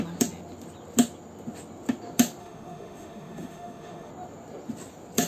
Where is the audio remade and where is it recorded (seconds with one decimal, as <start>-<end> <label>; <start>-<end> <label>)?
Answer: 0.0-2.4 recorded; 2.4-4.1 remade; 4.1-5.3 recorded